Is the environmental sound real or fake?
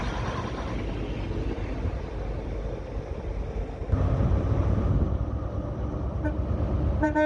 real